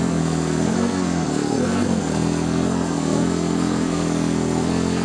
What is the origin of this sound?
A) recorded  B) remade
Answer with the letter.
B